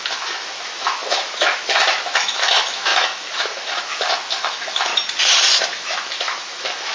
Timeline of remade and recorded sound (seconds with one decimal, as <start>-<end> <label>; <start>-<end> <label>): 0.0-4.9 remade; 4.9-5.7 recorded; 5.7-6.9 remade